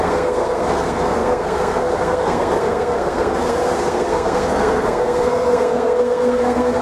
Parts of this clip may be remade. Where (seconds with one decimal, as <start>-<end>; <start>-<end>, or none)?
0.0-6.8